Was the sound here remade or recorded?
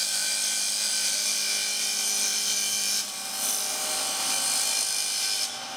recorded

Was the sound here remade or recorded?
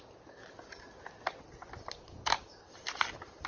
recorded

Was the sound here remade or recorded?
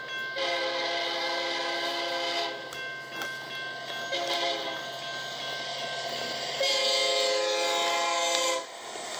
recorded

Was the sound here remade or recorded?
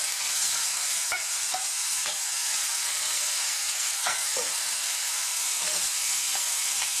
remade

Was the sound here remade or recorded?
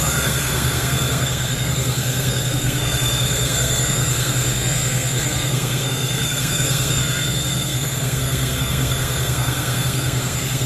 remade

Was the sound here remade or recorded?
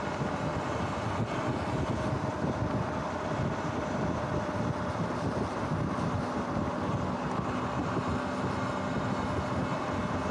recorded